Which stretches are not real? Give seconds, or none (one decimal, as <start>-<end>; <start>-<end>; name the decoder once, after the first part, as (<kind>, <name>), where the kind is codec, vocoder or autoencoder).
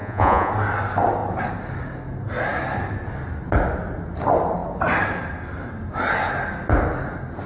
0.0-0.5 (vocoder, Vocos)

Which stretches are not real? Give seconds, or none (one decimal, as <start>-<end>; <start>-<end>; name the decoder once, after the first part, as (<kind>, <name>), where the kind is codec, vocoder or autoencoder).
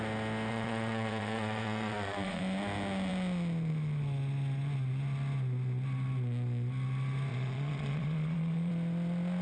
0.5-2.4 (vocoder, Vocos); 7.3-8.7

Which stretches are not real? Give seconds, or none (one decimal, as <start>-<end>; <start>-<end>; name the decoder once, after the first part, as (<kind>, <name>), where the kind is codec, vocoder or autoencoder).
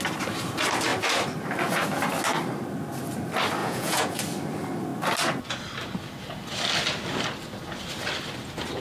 3.6-4.2 (vocoder, Vocos)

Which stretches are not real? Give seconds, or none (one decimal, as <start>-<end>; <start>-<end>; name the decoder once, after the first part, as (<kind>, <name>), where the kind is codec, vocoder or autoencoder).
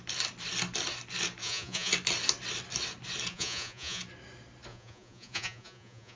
1.4-1.9 (vocoder, Vocos); 3.3-4.0; 4.7-6.2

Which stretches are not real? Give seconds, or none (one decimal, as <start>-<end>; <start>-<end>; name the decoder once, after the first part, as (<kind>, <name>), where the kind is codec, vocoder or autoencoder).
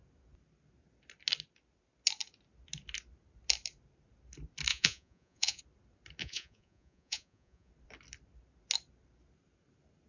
4.7-5.6 (vocoder, Vocos); 6.2-7.7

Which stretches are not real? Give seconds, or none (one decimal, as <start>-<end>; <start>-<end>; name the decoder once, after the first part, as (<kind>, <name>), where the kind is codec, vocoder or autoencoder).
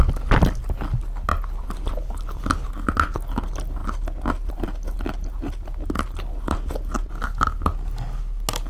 none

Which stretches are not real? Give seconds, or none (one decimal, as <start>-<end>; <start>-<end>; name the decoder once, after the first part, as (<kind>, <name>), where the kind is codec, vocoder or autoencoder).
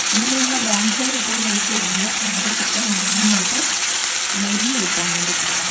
0.0-4.0 (vocoder, Vocos); 4.6-5.7